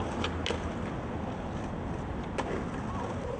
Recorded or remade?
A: recorded